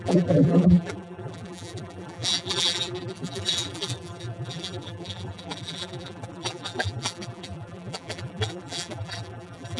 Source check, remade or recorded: remade